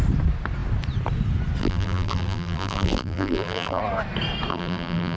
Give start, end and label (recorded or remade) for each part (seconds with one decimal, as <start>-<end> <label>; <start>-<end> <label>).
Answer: 0.0-1.6 recorded; 1.6-3.8 remade; 3.8-4.5 recorded; 4.5-5.2 remade